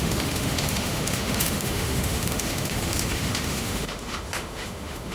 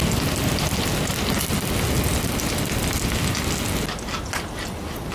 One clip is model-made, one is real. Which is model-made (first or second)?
first